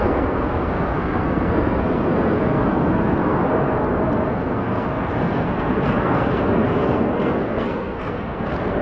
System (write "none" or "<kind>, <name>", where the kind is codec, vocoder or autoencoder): codec, SNAC